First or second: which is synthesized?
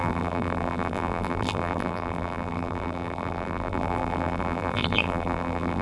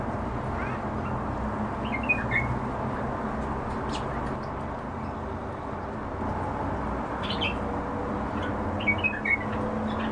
first